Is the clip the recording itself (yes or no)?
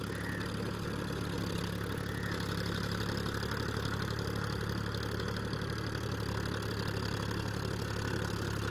yes